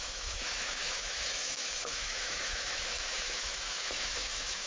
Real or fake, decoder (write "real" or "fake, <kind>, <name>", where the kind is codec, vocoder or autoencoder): fake, autoencoder, DAC-VAE